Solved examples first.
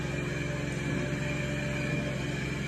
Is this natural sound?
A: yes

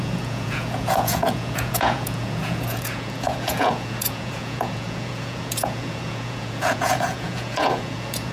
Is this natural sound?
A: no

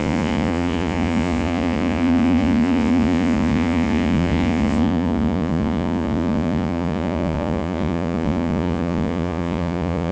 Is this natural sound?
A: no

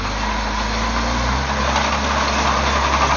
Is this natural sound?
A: yes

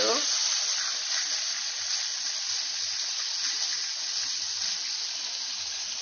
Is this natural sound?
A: yes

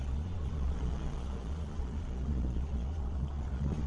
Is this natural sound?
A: no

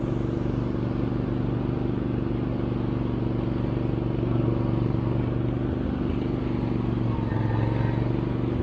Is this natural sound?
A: yes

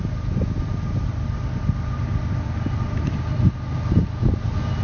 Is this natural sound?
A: yes